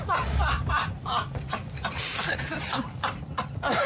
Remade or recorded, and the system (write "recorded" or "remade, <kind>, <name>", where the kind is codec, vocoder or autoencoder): recorded